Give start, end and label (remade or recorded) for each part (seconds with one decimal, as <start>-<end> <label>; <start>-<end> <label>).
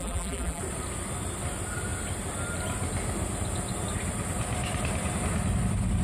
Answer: 0.0-0.6 remade; 0.6-6.0 recorded